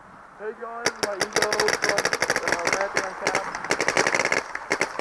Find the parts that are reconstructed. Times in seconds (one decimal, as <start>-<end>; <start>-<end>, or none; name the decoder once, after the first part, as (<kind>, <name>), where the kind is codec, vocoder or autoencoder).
4.0-5.0 (vocoder, BigVGAN v2)